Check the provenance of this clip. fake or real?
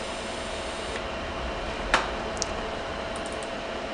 real